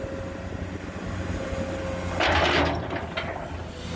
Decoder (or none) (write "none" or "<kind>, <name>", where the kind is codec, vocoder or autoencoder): none